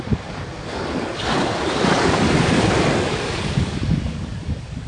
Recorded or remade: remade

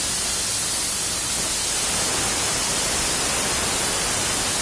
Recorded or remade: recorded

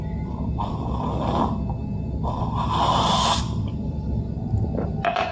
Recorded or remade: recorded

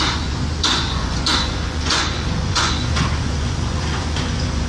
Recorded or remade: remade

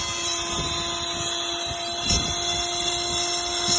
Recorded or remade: recorded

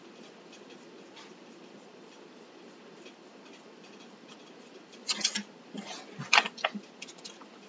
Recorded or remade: recorded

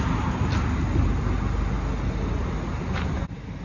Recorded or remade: recorded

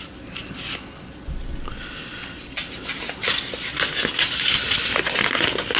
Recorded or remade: recorded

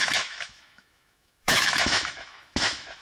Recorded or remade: remade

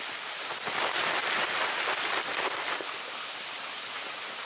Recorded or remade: recorded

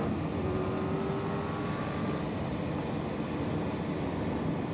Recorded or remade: recorded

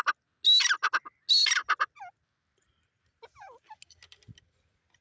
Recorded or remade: recorded